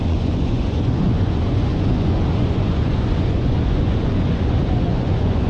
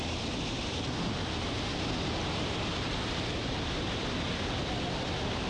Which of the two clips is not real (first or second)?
first